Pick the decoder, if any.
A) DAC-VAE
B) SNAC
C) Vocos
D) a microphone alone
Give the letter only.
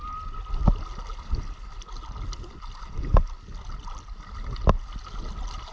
D